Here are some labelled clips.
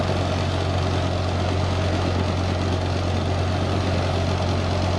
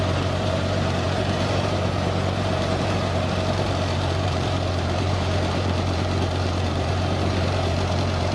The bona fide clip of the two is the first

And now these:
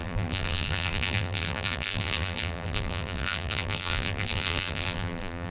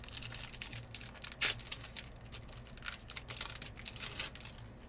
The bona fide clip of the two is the second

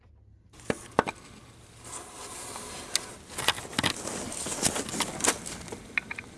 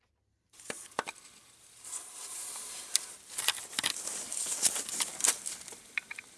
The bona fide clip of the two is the first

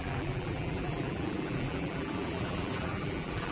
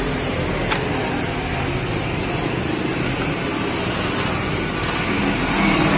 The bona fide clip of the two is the second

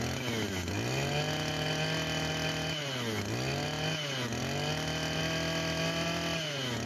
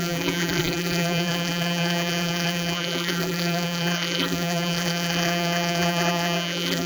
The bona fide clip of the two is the first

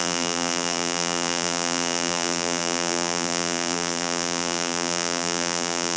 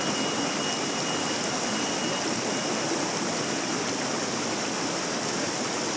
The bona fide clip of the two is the second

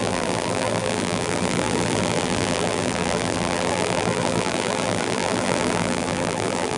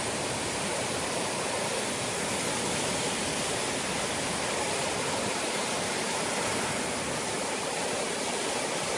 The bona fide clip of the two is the second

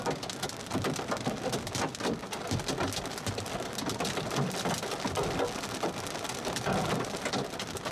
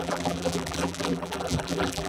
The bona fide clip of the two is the first